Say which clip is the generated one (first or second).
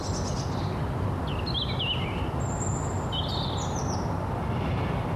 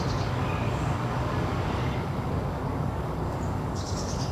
second